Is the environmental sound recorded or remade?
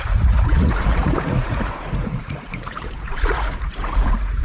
remade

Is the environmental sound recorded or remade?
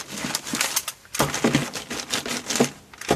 recorded